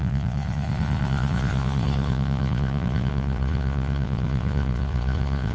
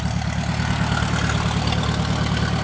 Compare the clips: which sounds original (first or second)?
second